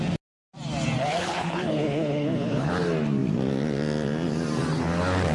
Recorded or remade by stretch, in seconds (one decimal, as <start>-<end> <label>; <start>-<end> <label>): 0.0-1.0 recorded; 1.0-2.7 remade; 2.7-5.3 recorded